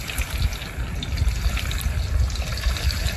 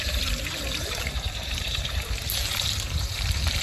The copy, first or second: second